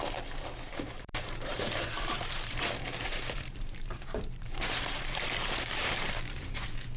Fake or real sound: fake